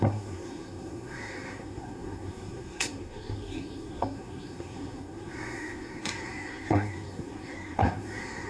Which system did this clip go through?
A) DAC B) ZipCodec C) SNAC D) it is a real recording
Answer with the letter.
C